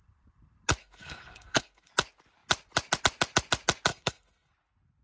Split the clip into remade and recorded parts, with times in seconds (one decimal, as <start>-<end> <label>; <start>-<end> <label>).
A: 0.0-0.8 recorded; 0.8-1.9 remade; 1.9-3.9 recorded; 3.9-4.5 remade; 4.5-5.0 recorded